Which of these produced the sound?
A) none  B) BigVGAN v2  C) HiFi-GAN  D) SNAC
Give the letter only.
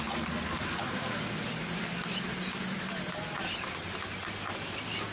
A